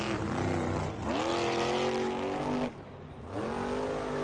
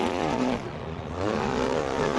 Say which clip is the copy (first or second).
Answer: second